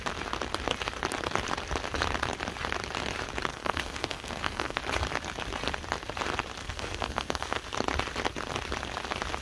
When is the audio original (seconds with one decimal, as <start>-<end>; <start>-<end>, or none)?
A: 0.0-3.5; 4.8-6.6; 7.6-9.4